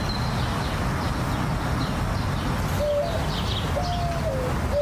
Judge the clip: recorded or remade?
recorded